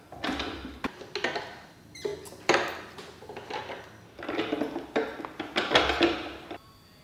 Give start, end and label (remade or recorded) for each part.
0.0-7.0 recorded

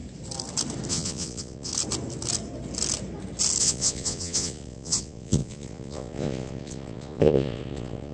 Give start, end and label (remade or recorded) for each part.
0.0-0.9 recorded; 0.9-1.7 remade; 1.7-3.6 recorded; 3.6-8.1 remade